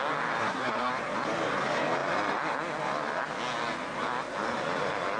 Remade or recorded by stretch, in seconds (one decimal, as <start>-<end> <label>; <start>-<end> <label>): 0.0-0.4 recorded; 0.4-0.9 remade; 0.9-5.2 recorded